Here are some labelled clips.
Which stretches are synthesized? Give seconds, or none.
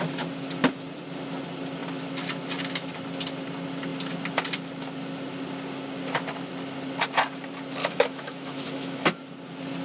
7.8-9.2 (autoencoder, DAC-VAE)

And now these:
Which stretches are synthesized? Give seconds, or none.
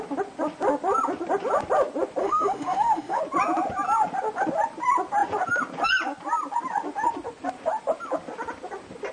2.2-3.2 (autoencoder, DAC-VAE)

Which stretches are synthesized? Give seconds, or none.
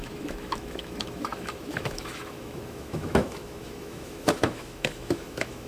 0.0-5.7 (autoencoder, DAC-VAE)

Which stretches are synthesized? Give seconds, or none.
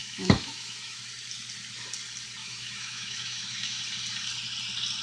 0.0-1.0 (autoencoder, DAC-VAE); 2.4-3.8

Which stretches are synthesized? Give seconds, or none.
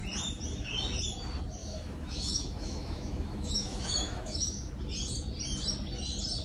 1.6-4.7 (autoencoder, DAC-VAE)